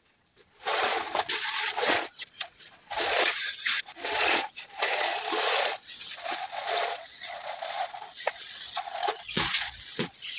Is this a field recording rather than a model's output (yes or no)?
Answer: no